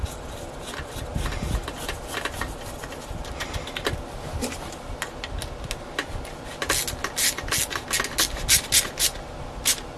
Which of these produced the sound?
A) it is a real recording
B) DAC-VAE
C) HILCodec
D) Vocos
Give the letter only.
A